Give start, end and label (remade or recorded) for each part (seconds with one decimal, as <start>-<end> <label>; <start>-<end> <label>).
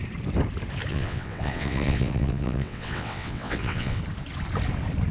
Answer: 0.0-0.9 recorded; 0.9-4.0 remade; 4.0-5.1 recorded